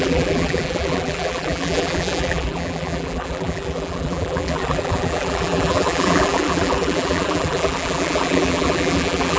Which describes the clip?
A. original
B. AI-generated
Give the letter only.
B